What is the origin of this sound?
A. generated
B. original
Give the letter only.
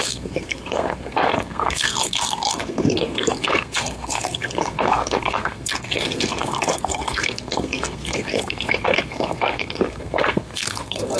A